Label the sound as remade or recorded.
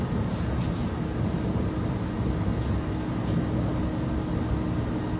recorded